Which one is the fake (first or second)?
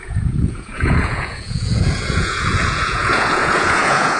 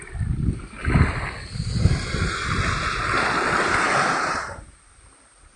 first